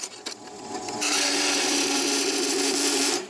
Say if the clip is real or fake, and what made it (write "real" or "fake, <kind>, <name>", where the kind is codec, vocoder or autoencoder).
real